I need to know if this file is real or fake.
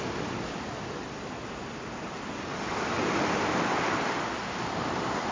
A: real